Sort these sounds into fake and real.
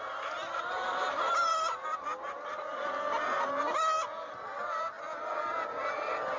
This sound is real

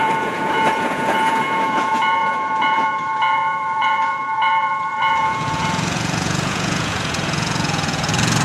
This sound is fake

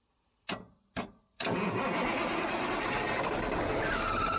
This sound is real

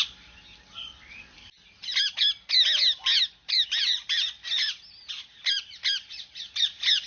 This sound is real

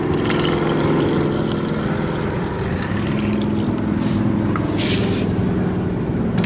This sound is real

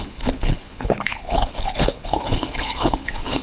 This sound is fake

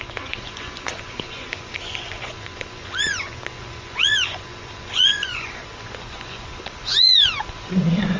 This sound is fake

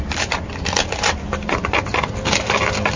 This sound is real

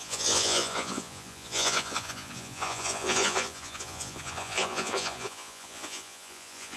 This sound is fake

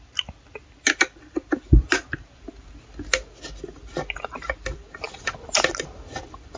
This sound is real